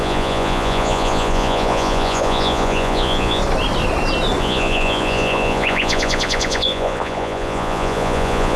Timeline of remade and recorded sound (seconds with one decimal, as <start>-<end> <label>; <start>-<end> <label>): 0.0-3.4 remade; 3.4-4.4 recorded; 4.4-8.6 remade